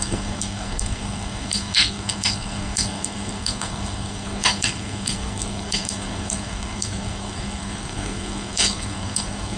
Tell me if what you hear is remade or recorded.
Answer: remade